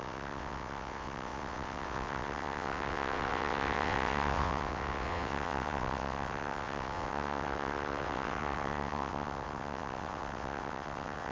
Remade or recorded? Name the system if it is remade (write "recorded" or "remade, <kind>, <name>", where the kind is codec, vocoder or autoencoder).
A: remade, vocoder, WaveNeXt